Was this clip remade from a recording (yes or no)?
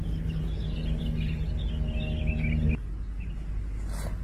no